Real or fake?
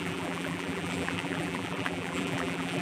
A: fake